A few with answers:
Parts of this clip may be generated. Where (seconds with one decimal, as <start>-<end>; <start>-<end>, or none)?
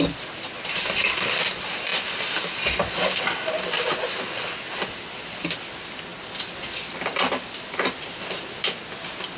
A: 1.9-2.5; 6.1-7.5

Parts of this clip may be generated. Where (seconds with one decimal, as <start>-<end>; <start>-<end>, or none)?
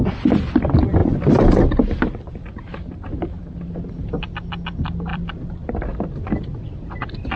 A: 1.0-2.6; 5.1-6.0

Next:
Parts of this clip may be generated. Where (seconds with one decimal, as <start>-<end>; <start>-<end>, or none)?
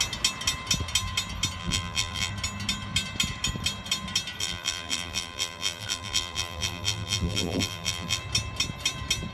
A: 1.6-2.3; 4.4-8.2